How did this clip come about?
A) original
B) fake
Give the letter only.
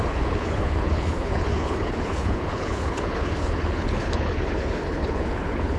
B